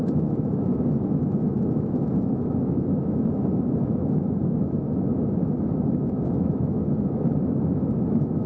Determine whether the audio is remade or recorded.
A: remade